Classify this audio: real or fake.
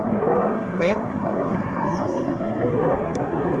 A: fake